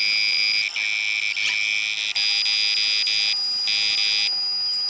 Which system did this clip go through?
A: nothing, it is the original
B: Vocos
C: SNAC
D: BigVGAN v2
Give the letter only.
A